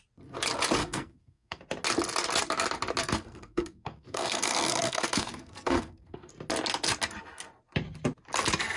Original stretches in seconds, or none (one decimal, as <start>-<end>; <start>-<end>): 0.0-0.8; 1.6-3.0; 6.3-8.8